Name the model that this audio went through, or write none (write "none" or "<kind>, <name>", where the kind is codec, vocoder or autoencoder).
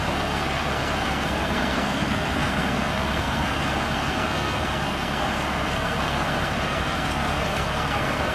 codec, SNAC